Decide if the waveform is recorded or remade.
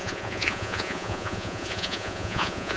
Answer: remade